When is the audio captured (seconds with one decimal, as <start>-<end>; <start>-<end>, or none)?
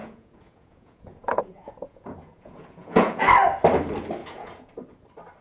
3.2-4.2; 4.7-5.4